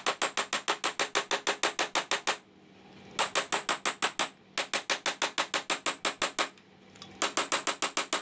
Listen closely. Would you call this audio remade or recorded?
recorded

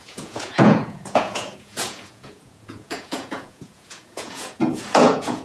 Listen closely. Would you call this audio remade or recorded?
remade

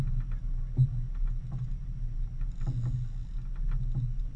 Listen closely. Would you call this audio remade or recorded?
recorded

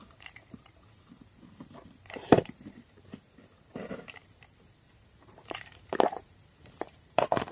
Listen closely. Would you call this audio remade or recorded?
remade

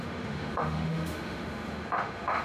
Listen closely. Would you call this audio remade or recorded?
remade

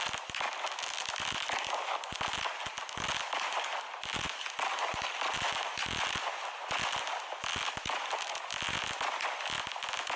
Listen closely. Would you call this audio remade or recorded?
recorded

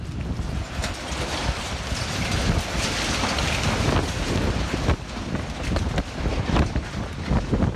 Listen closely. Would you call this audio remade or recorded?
recorded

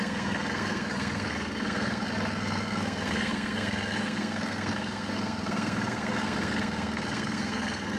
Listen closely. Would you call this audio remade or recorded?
remade